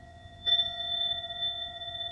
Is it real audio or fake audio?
fake